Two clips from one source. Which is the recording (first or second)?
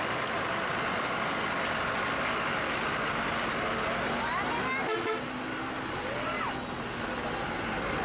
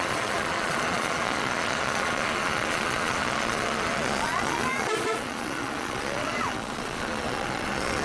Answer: first